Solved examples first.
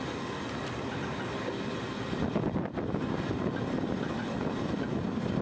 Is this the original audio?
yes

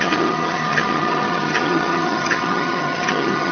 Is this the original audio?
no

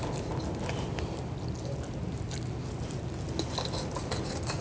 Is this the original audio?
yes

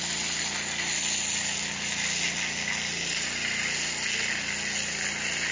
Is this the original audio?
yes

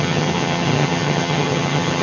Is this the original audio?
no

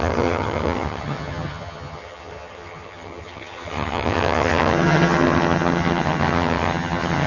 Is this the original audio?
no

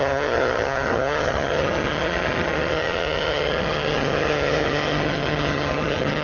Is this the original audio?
no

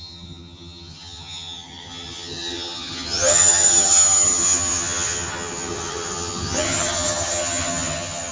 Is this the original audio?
no